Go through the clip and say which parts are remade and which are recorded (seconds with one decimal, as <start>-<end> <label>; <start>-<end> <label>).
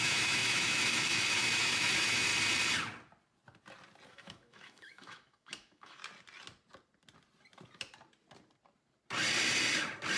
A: 0.0-2.3 remade; 2.3-4.1 recorded; 4.1-6.0 remade; 6.0-10.2 recorded